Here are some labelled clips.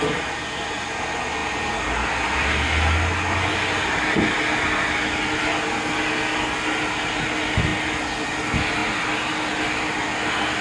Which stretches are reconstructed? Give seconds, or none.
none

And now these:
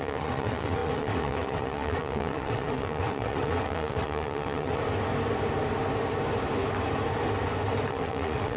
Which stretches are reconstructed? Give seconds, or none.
0.0-4.8 (vocoder, WaveNeXt); 7.9-8.6